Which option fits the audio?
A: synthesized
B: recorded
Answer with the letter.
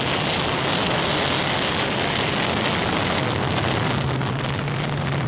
B